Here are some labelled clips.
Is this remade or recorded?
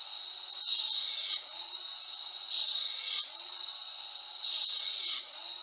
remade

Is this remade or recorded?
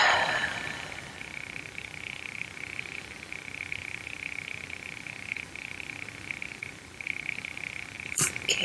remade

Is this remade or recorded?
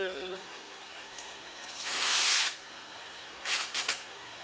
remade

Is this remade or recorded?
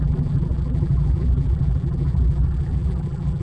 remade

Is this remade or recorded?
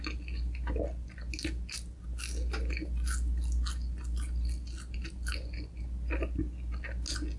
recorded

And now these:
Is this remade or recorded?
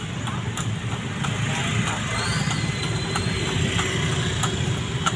recorded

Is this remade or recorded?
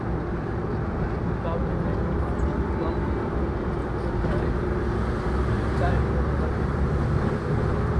recorded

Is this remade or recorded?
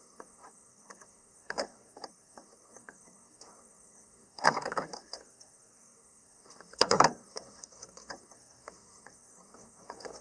remade